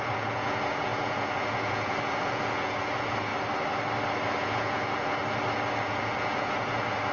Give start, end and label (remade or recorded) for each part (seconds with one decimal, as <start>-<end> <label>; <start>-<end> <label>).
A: 0.0-3.3 remade; 3.3-4.4 recorded; 4.4-5.2 remade; 5.2-5.8 recorded; 5.8-7.1 remade